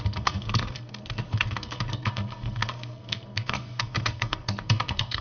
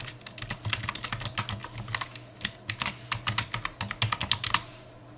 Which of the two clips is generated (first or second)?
first